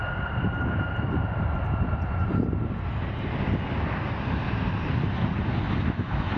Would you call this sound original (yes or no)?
yes